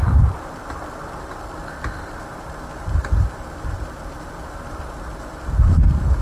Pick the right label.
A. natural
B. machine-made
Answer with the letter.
B